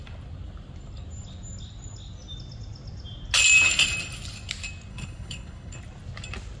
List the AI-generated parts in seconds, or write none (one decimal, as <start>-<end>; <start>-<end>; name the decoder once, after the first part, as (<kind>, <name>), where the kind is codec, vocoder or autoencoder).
4.9-5.8 (codec, HILCodec)